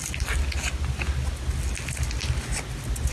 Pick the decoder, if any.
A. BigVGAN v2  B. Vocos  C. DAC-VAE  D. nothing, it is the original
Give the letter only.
D